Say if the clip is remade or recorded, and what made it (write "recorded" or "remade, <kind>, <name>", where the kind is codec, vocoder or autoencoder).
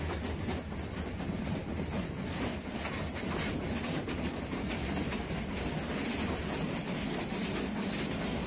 recorded